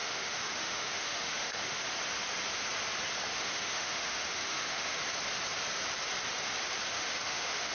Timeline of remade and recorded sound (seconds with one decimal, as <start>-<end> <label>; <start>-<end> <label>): 0.0-1.8 remade; 1.8-3.3 recorded; 3.3-5.0 remade; 5.0-6.9 recorded; 6.9-7.7 remade

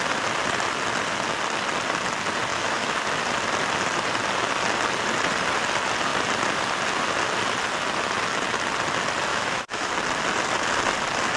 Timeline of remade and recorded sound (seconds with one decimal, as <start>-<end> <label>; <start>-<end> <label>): 0.0-2.5 recorded; 2.5-3.0 remade; 3.0-9.3 recorded; 9.3-9.9 remade; 9.9-11.4 recorded